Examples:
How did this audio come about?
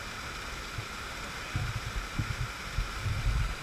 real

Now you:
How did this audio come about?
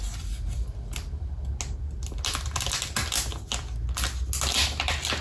real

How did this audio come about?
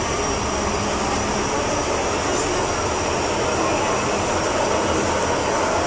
real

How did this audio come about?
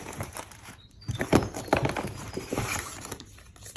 fake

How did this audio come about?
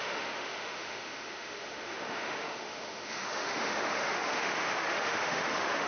fake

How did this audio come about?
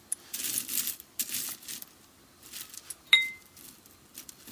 real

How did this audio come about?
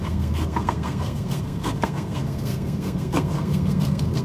fake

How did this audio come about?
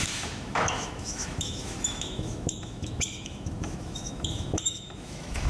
fake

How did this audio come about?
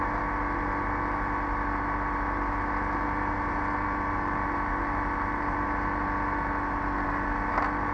real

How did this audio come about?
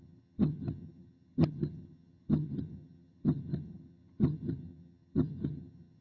fake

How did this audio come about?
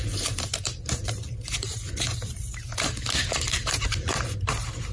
fake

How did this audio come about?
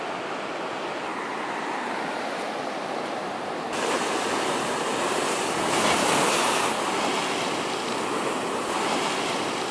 fake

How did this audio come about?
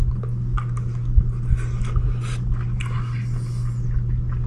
real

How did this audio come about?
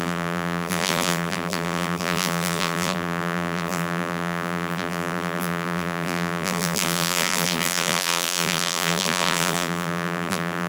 fake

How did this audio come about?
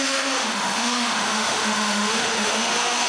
fake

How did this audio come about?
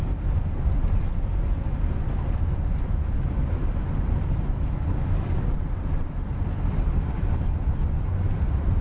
real